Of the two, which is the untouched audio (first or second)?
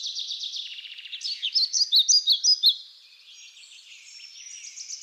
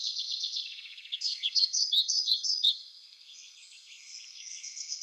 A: first